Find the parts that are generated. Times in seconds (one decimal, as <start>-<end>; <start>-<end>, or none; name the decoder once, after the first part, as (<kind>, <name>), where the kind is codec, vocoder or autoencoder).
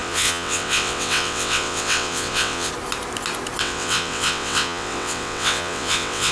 0.0-2.7 (vocoder, WaveNeXt); 3.6-6.3